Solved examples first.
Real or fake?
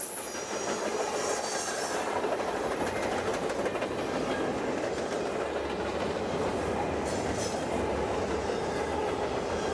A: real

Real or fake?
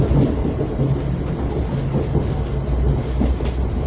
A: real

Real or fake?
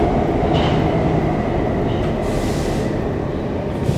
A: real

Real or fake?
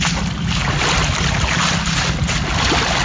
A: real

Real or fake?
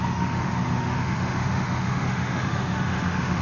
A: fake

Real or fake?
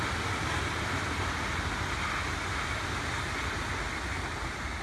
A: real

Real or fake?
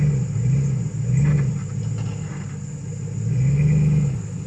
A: real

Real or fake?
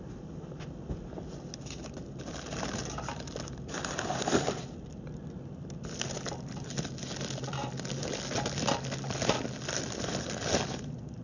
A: real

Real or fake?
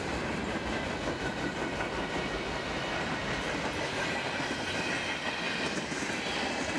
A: real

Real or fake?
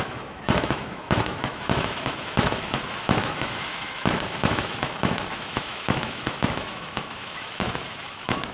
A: fake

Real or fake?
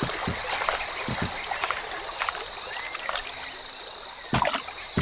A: real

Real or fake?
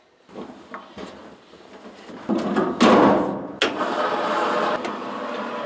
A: real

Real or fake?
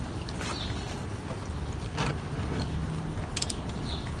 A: real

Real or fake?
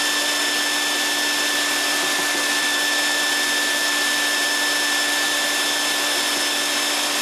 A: real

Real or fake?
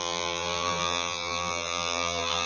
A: fake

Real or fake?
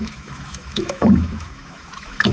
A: fake